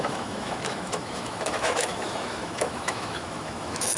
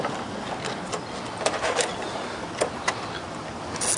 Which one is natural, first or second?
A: second